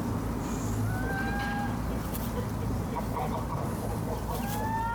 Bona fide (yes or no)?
yes